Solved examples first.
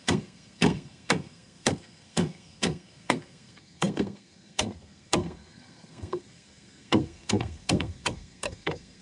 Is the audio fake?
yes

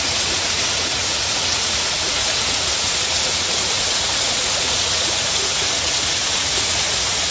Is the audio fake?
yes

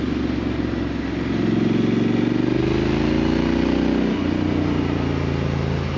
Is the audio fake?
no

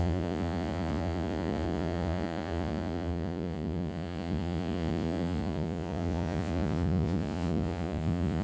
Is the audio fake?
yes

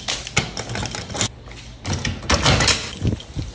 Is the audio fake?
no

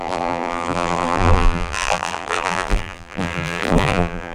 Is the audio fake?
yes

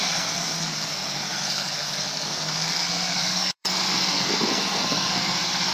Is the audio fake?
yes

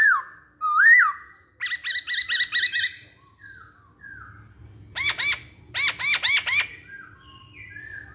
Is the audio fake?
no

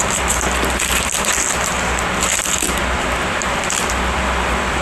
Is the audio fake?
yes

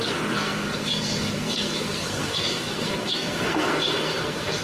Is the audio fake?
yes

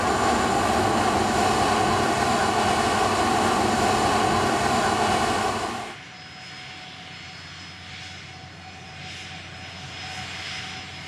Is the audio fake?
no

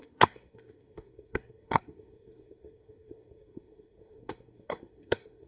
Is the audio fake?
yes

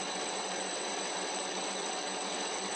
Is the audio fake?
yes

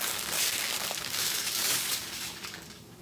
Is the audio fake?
yes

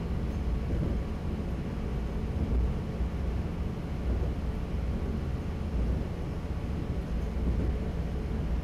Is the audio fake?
no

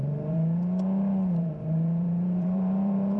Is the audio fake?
yes